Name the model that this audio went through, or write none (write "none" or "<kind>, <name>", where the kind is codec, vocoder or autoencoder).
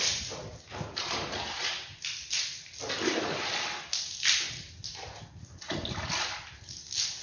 none